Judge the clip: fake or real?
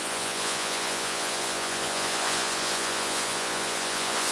fake